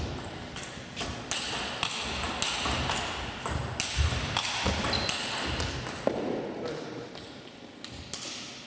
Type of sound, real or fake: real